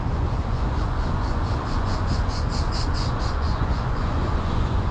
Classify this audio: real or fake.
fake